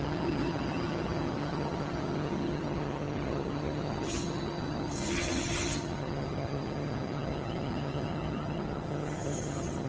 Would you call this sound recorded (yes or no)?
no